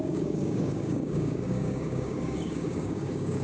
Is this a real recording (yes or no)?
no